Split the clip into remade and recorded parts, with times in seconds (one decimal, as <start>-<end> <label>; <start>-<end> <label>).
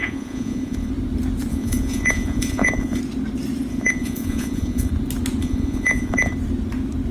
0.0-0.9 remade; 0.9-1.5 recorded; 1.5-3.0 remade; 3.0-3.7 recorded; 3.7-4.9 remade; 4.9-5.4 recorded; 5.4-6.3 remade; 6.3-7.1 recorded